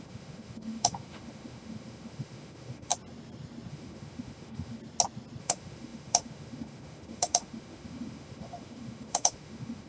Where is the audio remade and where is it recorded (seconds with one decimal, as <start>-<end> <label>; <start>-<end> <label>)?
0.0-2.9 remade; 2.9-3.7 recorded; 3.7-4.8 remade; 4.8-5.4 recorded; 5.4-9.9 remade